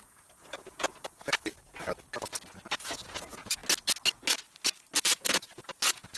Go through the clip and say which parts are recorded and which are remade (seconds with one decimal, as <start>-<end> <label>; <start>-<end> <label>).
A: 0.0-1.5 remade; 1.5-2.7 recorded; 2.7-3.6 remade; 3.6-5.0 recorded; 5.0-6.2 remade

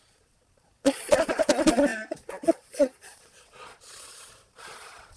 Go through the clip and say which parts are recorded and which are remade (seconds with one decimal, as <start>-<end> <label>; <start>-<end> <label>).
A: 0.0-5.2 remade

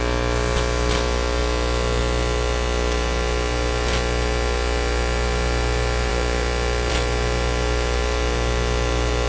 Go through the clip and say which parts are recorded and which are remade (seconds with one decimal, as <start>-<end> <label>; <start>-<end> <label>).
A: 0.0-9.3 recorded